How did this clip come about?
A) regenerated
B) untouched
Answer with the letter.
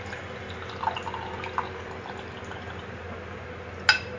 B